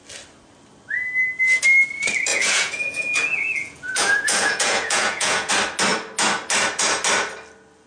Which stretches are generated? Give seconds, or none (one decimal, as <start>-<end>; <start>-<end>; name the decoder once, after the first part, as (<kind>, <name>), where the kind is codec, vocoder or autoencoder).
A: 2.3-5.5 (vocoder, Vocos)